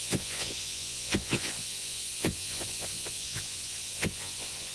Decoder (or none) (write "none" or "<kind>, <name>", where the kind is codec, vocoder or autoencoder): vocoder, Vocos